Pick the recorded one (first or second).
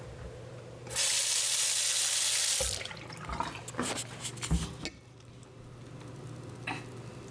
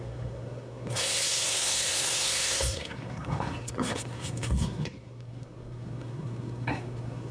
first